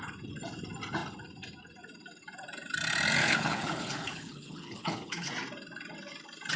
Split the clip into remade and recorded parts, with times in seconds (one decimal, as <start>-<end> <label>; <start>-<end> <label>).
0.0-3.2 recorded; 3.2-5.3 remade; 5.3-6.6 recorded